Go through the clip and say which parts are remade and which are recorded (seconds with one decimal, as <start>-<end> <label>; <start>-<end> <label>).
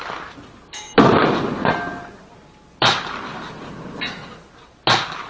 0.0-5.3 recorded